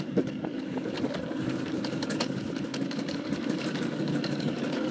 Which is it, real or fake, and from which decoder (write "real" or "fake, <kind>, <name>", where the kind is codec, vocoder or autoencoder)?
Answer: fake, codec, DAC